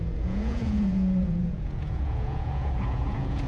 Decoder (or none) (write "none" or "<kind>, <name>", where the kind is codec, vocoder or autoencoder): vocoder, Vocos